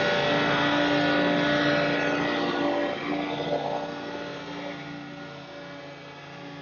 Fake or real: real